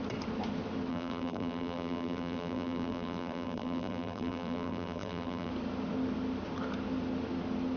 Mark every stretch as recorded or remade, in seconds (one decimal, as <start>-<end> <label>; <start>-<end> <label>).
0.0-0.9 recorded; 0.9-5.5 remade; 5.5-7.8 recorded